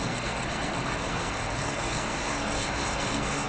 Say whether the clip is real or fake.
fake